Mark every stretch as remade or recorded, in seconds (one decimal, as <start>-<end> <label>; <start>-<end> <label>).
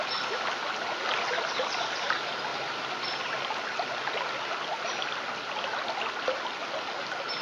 0.0-7.4 recorded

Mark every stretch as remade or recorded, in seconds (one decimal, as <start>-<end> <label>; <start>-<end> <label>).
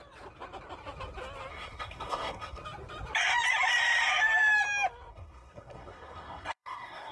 0.0-1.5 recorded; 1.5-2.6 remade; 2.6-5.1 recorded; 5.1-7.1 remade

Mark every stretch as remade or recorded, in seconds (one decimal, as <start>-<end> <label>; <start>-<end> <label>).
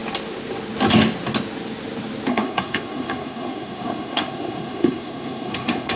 0.0-2.3 recorded; 2.3-6.0 remade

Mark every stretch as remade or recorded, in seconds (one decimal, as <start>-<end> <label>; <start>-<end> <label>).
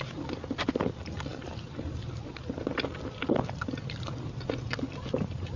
0.0-5.6 recorded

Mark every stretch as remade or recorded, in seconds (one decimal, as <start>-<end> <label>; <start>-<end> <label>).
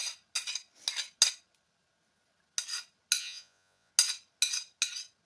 0.0-3.2 recorded; 3.2-3.9 remade; 3.9-5.3 recorded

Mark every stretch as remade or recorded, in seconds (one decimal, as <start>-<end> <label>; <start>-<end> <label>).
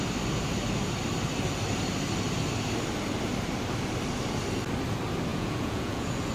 0.0-5.3 recorded; 5.3-6.3 remade